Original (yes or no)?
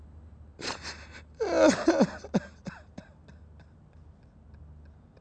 yes